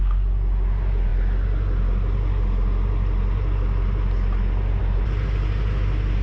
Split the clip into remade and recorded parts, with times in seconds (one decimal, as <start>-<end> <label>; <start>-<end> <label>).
0.0-6.2 recorded